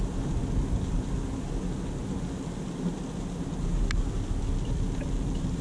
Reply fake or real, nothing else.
real